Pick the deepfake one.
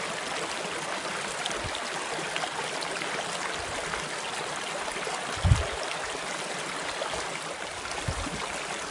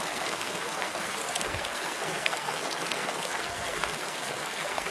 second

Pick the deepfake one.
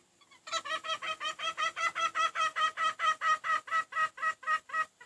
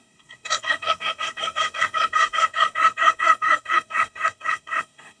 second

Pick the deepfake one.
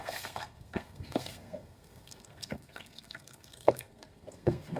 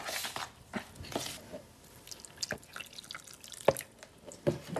first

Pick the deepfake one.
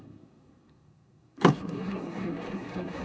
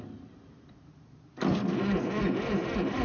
first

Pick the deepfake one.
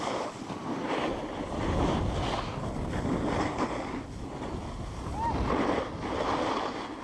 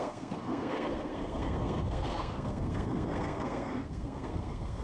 second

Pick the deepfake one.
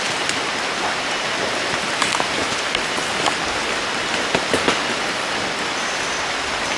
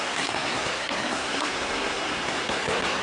second